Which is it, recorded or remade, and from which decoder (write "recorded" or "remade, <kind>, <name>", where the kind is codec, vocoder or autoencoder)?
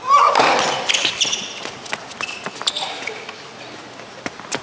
recorded